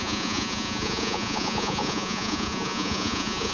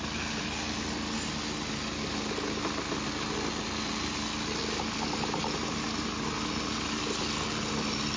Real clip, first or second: second